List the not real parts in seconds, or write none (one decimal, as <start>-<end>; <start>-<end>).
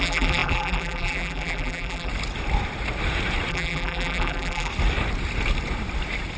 0.0-2.1; 3.5-4.7